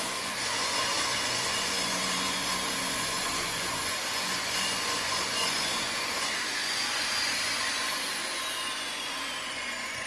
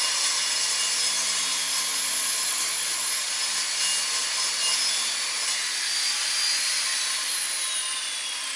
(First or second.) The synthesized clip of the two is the first